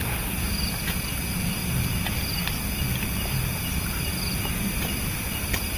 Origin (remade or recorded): recorded